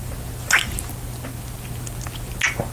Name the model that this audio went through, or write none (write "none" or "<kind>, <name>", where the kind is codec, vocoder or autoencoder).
none